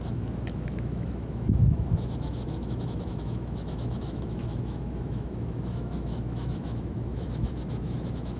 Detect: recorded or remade remade